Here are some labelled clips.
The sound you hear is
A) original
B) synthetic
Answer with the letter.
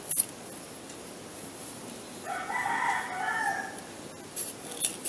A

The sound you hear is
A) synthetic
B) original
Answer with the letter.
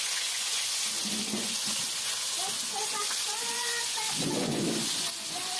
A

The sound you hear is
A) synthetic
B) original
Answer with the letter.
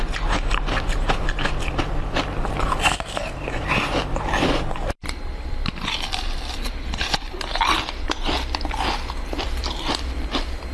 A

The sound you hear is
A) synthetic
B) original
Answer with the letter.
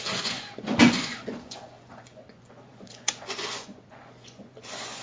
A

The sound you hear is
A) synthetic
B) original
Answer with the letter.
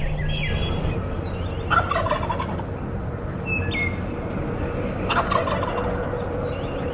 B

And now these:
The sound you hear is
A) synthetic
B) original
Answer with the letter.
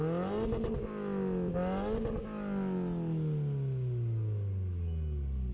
B